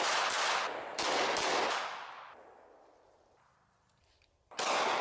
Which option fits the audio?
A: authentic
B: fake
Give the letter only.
A